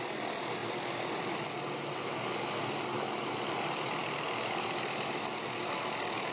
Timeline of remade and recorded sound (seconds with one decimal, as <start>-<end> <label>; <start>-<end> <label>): 0.0-6.3 recorded